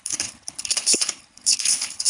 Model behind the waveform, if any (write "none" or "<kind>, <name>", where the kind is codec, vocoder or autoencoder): codec, HILCodec